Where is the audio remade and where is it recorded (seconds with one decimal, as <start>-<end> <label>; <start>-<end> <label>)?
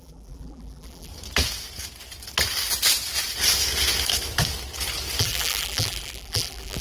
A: 0.0-1.1 remade; 1.1-5.2 recorded; 5.2-6.8 remade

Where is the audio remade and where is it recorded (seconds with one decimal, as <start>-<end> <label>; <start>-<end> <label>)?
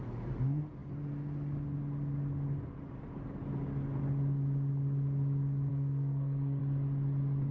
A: 0.0-5.7 recorded; 5.7-6.6 remade; 6.6-7.5 recorded